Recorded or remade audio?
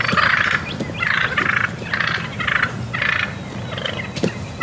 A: recorded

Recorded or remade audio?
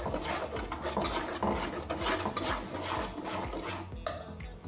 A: recorded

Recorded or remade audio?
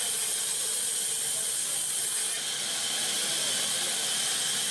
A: recorded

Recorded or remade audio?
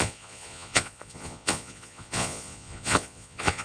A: remade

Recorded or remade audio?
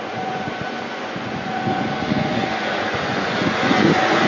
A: remade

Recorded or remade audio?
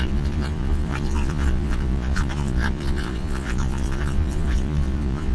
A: remade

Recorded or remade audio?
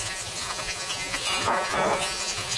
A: remade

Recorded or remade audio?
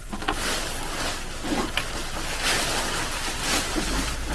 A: recorded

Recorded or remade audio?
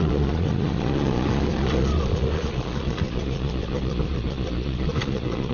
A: remade